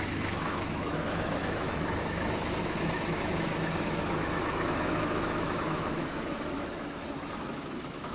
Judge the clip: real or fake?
fake